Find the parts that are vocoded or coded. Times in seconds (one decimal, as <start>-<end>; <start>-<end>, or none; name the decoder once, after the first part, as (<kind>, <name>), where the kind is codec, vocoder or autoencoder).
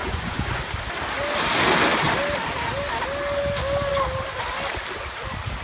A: 0.0-0.6 (vocoder, Vocos)